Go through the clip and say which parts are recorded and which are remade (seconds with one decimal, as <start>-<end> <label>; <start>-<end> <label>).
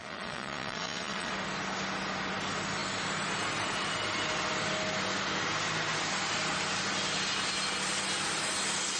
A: 0.0-1.3 remade; 1.3-9.0 recorded